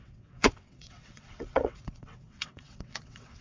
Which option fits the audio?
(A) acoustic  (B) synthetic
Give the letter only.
B